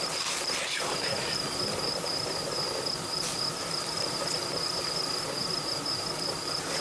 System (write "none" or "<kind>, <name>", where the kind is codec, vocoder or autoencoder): none